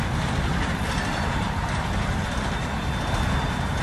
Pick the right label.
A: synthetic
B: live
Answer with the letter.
B